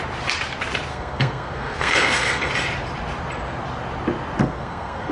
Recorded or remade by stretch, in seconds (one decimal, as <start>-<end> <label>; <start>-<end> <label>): 0.0-0.9 recorded; 0.9-2.5 remade; 2.5-4.4 recorded; 4.4-5.1 remade